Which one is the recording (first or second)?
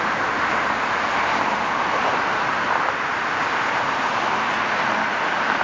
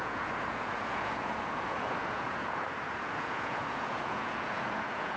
first